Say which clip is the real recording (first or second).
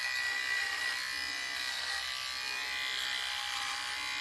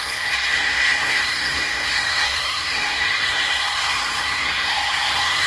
first